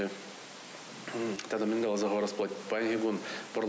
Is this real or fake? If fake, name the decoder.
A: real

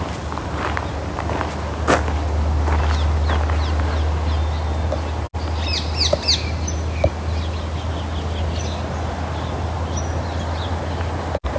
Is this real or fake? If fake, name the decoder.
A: real